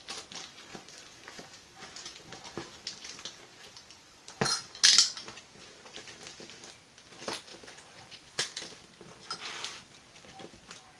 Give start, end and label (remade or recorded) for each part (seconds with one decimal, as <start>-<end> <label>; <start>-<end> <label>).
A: 0.0-0.5 recorded; 0.5-2.4 remade; 2.4-3.5 recorded; 3.5-4.6 remade; 4.6-7.5 recorded; 7.5-8.4 remade; 8.4-11.0 recorded